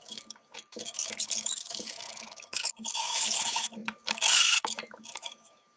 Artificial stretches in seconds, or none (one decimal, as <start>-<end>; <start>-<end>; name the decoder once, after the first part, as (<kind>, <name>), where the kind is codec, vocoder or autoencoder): 0.0-5.8 (codec, DAC)